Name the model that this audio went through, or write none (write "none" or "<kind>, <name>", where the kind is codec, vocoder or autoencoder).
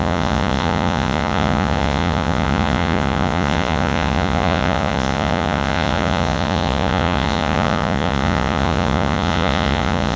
vocoder, Vocos